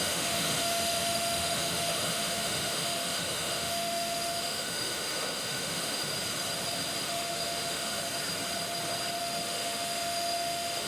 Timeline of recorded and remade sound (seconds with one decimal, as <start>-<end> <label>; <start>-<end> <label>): 0.0-6.1 remade; 6.1-7.0 recorded; 7.0-8.0 remade; 8.0-9.2 recorded; 9.2-10.9 remade